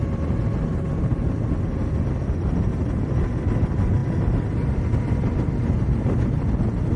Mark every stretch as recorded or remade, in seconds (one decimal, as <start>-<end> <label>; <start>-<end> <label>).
0.0-7.0 recorded

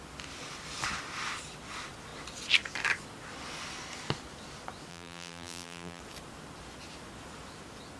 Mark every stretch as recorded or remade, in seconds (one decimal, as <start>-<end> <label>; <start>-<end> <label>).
0.0-4.9 recorded; 4.9-6.0 remade; 6.0-8.0 recorded

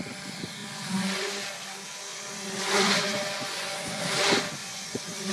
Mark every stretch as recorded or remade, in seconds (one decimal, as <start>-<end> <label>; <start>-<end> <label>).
0.0-0.6 recorded; 0.6-1.3 remade; 1.3-2.1 recorded; 2.1-4.0 remade; 4.0-4.6 recorded; 4.6-5.3 remade